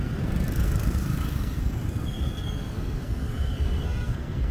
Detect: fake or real fake